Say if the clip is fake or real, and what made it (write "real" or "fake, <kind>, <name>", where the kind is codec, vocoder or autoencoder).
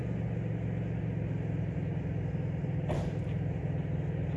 real